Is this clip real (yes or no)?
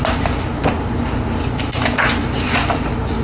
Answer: yes